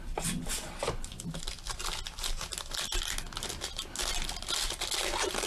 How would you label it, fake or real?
real